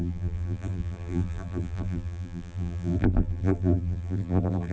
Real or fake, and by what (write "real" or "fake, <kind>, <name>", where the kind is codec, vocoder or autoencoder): fake, vocoder, BigVGAN v2